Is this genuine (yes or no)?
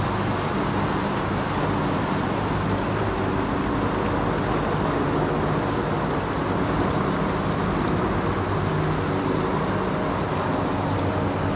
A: yes